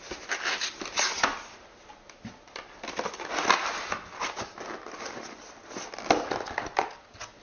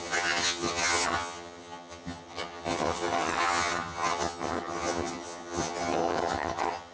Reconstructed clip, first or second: second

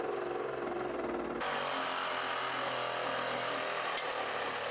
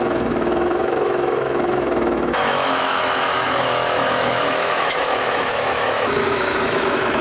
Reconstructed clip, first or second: second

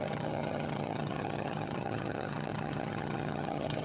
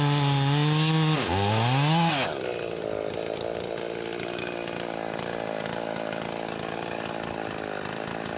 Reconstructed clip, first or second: first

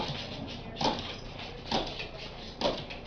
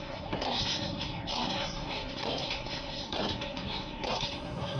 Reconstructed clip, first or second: second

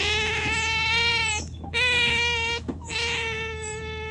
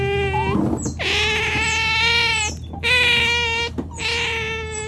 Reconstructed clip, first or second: first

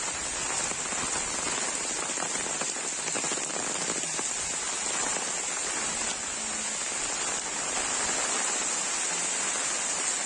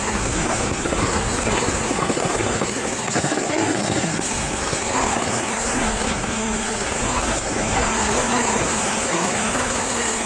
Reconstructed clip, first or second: second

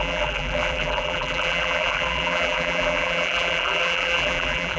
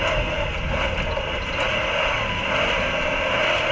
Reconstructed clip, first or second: first